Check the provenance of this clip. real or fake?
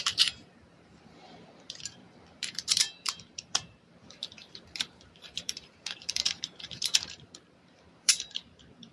fake